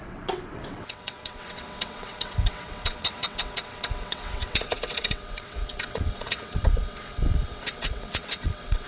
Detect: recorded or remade remade